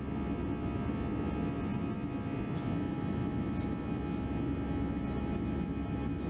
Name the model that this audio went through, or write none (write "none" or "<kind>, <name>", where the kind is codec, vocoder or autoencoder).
none